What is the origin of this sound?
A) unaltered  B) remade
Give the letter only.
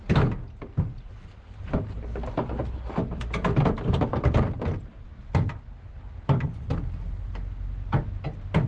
A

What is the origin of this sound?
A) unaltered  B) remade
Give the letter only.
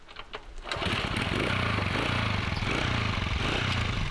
A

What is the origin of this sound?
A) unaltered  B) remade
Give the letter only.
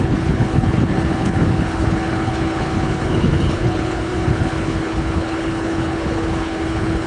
B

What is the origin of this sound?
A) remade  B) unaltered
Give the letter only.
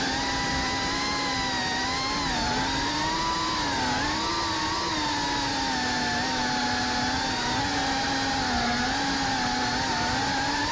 B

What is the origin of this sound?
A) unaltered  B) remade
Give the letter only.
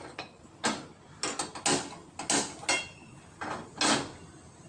A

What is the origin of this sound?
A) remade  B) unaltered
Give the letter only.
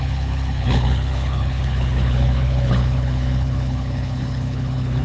A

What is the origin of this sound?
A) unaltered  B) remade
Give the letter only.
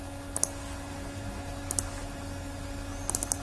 A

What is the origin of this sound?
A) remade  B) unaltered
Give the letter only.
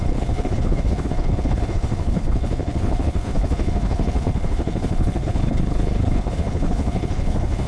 A